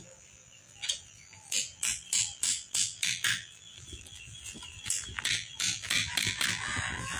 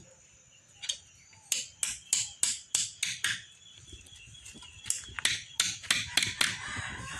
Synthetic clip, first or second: first